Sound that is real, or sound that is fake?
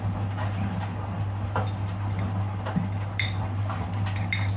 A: real